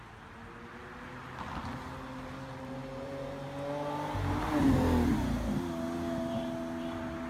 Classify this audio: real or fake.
real